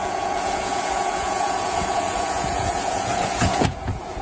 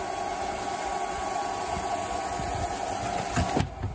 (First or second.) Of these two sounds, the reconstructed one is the first